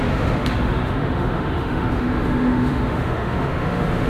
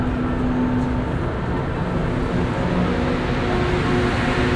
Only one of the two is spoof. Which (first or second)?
first